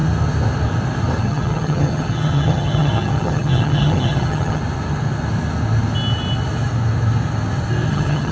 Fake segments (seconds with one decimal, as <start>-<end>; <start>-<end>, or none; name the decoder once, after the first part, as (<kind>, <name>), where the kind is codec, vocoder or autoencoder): 1.2-4.6 (vocoder, HiFi-GAN); 7.9-8.3